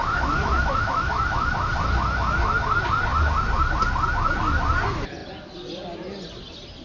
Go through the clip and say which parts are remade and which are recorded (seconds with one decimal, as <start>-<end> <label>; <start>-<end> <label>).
0.0-1.7 remade; 1.7-6.8 recorded